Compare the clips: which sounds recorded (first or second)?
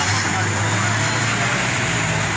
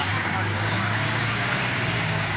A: first